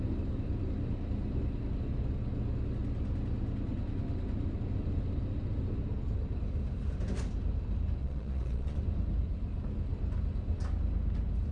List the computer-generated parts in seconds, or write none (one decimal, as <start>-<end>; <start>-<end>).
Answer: 8.0-8.8